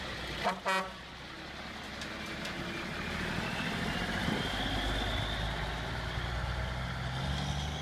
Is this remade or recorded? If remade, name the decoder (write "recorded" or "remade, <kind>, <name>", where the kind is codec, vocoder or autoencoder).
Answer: recorded